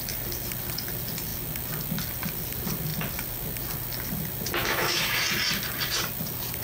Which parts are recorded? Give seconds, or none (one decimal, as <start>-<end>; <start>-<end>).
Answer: 0.0-4.6; 5.2-6.6